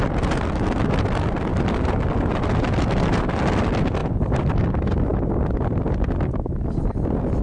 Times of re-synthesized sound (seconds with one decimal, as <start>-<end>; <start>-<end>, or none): 4.0-4.5; 5.1-5.7